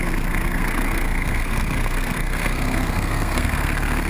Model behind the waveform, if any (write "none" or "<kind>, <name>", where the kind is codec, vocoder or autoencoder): codec, SNAC